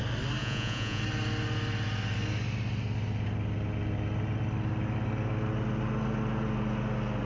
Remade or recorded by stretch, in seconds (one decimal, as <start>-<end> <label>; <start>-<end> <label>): 0.0-0.4 recorded; 0.4-1.0 remade; 1.0-7.2 recorded